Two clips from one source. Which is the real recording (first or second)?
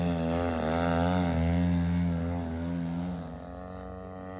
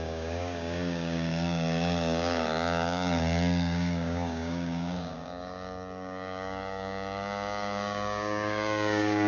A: first